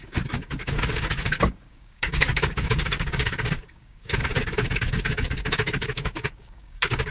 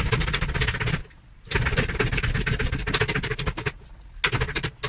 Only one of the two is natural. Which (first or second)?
second